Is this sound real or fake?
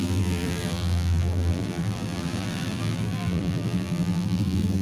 fake